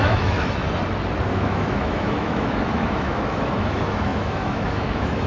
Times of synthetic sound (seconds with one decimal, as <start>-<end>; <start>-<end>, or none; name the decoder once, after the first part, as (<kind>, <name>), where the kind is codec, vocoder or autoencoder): 0.0-0.6 (autoencoder, DAC-VAE); 1.3-5.3